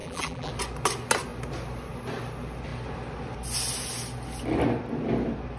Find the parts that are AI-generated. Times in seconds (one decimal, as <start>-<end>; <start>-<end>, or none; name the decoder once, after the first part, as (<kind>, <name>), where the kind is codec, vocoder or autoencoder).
0.0-0.5 (vocoder, BigVGAN v2)